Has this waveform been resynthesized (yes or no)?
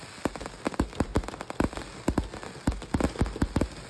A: no